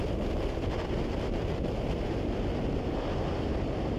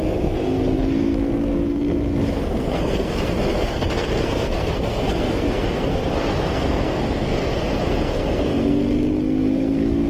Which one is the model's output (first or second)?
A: second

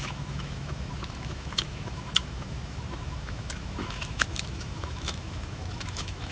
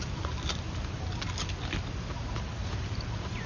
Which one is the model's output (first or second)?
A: first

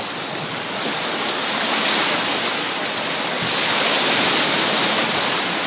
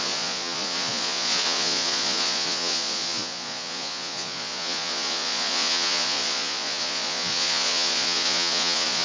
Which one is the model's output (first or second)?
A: second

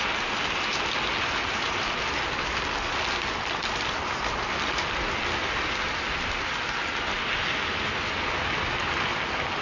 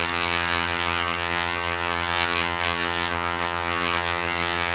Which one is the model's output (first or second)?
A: second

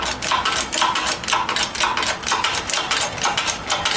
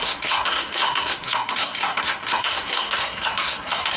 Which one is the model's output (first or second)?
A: second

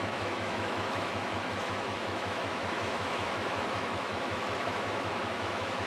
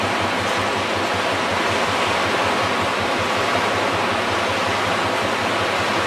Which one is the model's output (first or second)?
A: first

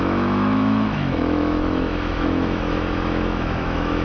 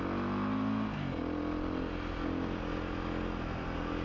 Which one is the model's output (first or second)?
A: first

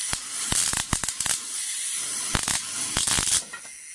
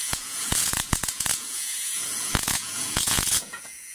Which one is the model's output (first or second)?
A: second